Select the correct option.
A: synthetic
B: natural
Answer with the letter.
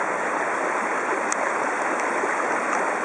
B